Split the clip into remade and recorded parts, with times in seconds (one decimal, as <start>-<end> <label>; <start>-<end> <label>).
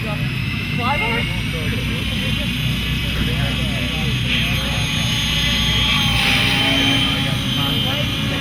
0.0-0.4 recorded; 0.4-1.2 remade; 1.2-8.4 recorded